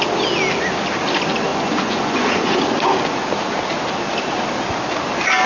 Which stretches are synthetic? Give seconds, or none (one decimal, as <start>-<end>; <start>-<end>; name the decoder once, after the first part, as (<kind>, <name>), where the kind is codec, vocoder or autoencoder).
1.5-2.6 (vocoder, Vocos)